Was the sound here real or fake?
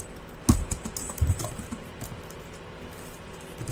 real